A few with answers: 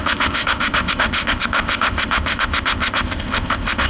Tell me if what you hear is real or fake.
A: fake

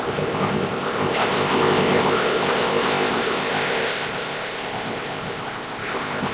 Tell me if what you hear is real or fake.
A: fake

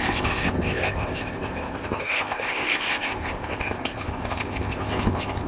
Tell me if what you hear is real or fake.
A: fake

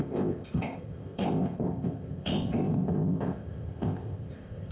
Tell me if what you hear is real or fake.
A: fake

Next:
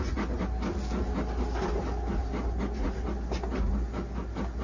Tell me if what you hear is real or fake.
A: real